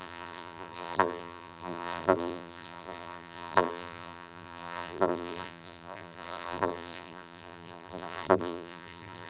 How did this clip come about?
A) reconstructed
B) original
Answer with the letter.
A